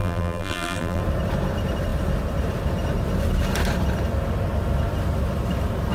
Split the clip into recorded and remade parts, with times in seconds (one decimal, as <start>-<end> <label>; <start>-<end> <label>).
0.0-1.0 remade; 1.0-5.9 recorded